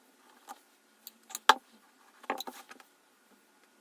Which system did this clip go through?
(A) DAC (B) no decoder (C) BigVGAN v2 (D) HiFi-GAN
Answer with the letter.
B